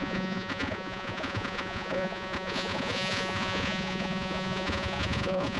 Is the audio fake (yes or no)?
yes